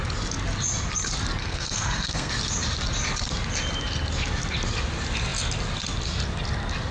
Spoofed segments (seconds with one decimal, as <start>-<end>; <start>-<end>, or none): 1.4-2.3